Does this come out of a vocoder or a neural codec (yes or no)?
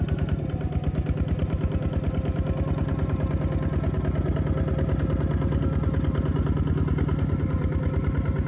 no